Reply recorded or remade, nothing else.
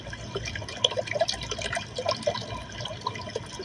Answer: recorded